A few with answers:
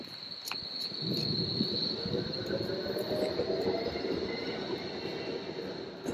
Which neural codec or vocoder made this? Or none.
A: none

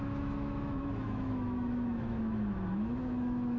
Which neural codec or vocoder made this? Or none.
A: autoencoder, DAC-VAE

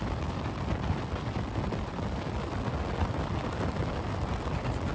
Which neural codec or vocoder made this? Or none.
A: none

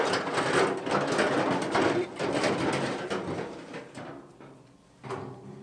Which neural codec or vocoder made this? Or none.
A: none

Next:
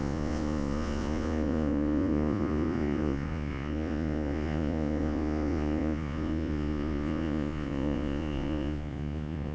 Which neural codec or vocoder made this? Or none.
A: vocoder, Vocos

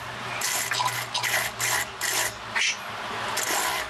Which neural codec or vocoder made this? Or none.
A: none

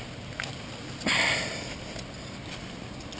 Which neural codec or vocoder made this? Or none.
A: none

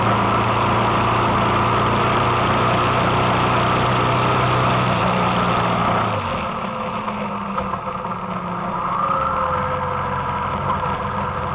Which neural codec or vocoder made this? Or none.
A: none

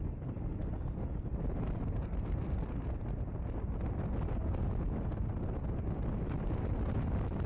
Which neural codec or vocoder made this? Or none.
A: none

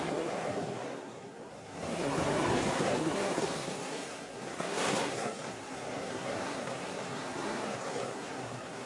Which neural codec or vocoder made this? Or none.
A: codec, SNAC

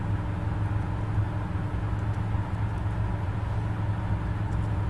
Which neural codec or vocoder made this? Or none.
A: none